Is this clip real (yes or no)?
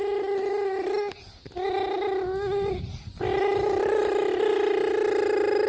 yes